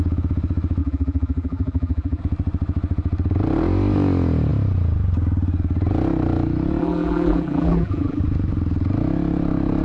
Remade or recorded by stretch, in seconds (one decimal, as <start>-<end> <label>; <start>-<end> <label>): 0.0-0.8 recorded; 0.8-2.2 remade; 2.2-6.8 recorded; 6.8-8.2 remade; 8.2-9.8 recorded